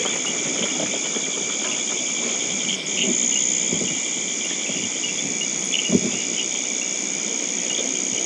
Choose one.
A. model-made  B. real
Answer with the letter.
B